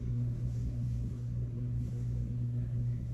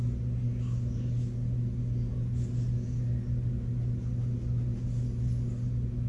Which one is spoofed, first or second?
first